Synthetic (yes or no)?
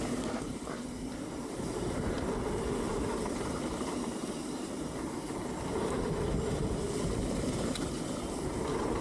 no